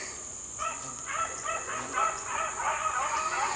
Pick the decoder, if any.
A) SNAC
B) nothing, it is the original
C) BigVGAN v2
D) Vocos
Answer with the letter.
D